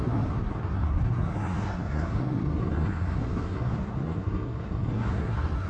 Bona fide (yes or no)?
no